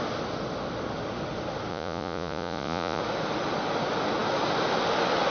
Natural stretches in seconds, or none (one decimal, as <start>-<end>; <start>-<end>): 0.0-1.7; 3.0-5.3